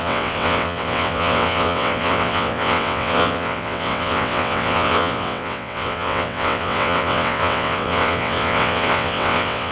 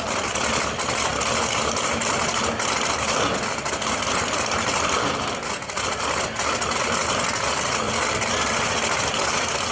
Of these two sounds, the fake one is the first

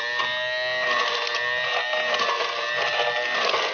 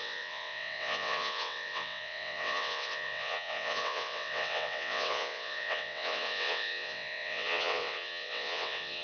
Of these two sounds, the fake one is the second